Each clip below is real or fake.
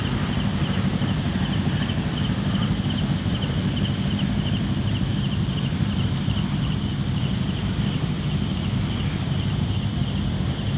real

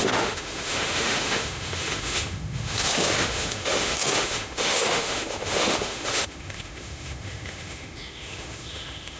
fake